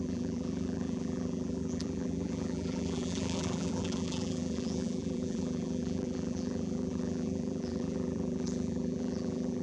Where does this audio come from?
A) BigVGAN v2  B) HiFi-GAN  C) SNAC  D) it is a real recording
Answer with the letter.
A